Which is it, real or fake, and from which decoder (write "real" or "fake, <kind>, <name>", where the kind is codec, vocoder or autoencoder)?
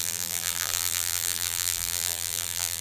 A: fake, vocoder, BigVGAN v2